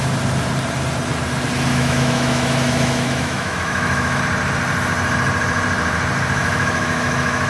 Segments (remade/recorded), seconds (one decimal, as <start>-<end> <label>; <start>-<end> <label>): 0.0-1.7 recorded; 1.7-4.2 remade; 4.2-6.4 recorded; 6.4-7.5 remade